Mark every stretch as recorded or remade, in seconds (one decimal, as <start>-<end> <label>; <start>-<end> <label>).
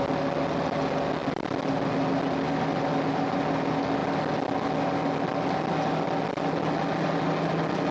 0.0-7.9 recorded